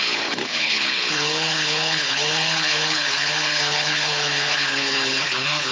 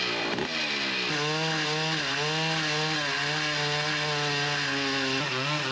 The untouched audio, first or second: second